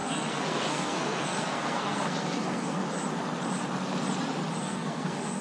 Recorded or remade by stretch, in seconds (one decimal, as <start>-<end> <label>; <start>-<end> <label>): 0.0-2.8 remade; 2.8-4.6 recorded; 4.6-5.4 remade